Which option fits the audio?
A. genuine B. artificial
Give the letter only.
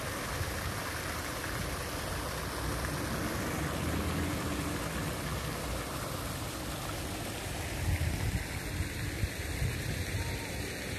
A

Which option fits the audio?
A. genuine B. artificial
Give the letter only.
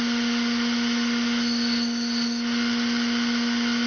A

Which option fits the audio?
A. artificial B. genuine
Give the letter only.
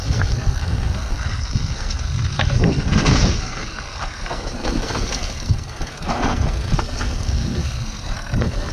A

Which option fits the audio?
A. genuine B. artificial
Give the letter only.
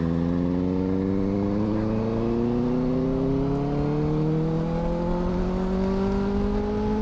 A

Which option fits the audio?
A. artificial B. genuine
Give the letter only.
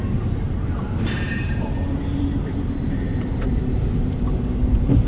A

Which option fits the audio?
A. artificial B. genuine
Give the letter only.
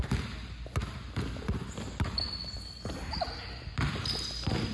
B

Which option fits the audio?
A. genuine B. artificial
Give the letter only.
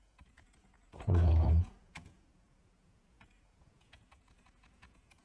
B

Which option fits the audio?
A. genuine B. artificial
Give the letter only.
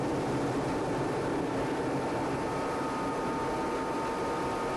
A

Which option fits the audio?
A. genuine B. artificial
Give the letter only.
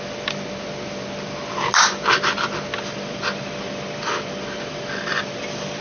A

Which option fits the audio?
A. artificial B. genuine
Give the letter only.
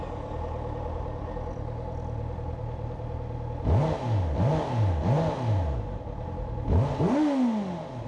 B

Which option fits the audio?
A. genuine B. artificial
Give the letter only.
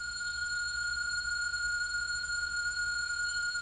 B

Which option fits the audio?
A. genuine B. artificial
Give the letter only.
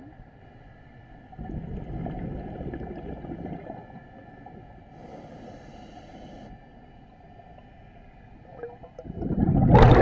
A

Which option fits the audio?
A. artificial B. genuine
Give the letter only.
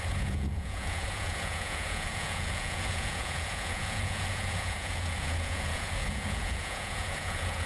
A